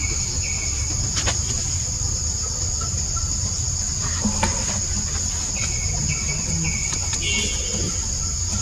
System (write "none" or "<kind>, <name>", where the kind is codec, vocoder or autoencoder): none